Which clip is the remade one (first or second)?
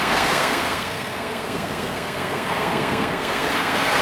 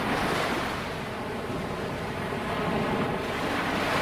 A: first